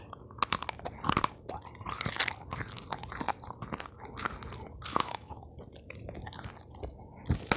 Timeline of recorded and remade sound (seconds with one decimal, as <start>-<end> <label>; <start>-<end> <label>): 0.0-4.9 recorded; 4.9-5.5 remade; 5.5-7.6 recorded

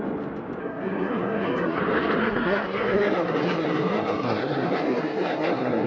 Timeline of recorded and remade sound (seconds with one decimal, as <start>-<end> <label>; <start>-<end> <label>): 0.0-0.6 recorded; 0.6-1.8 remade; 1.8-2.2 recorded; 2.2-5.9 remade

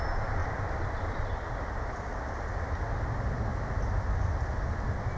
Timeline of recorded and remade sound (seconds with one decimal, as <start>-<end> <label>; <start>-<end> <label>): 0.0-5.2 recorded

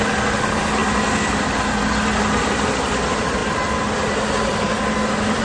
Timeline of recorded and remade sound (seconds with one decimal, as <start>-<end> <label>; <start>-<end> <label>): 0.0-5.4 recorded

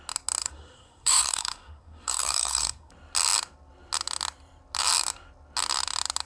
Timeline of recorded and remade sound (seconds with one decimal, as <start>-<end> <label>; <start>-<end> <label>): 0.0-0.4 recorded; 0.4-2.9 remade; 2.9-6.3 recorded